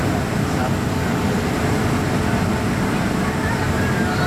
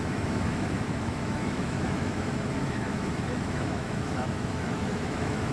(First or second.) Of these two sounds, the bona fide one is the first